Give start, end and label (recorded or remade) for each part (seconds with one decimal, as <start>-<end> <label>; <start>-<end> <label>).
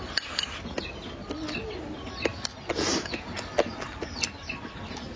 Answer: 0.0-5.2 recorded